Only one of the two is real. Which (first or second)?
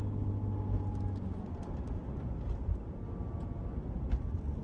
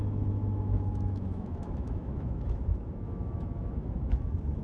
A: first